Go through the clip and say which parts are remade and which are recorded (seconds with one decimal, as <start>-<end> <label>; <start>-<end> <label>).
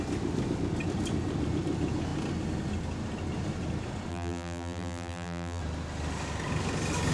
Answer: 0.0-4.1 recorded; 4.1-5.6 remade; 5.6-7.1 recorded